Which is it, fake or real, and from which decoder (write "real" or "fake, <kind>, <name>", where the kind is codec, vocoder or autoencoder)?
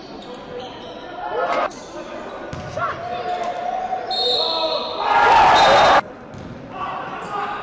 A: real